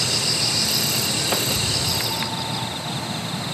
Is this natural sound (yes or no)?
yes